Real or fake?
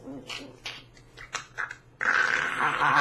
real